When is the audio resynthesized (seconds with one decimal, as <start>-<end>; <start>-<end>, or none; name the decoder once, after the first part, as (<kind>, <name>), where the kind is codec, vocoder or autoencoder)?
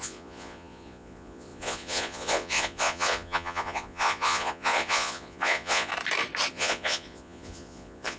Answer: 0.0-5.9 (vocoder, Vocos); 6.5-8.2